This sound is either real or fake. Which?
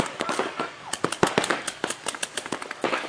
fake